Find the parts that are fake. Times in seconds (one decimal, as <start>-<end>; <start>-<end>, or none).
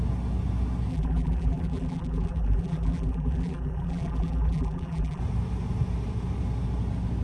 0.9-5.2